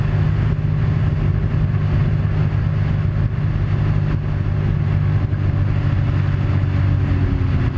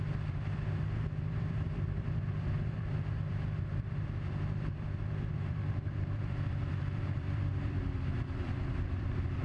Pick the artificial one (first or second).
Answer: second